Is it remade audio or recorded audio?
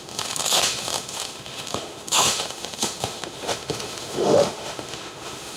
remade